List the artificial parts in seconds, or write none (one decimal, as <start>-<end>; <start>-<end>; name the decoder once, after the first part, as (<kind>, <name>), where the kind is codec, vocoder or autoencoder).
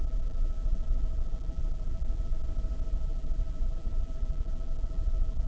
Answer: 0.0-2.4 (vocoder, BigVGAN v2); 2.9-5.5